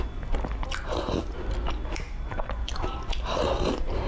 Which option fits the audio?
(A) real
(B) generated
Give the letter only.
A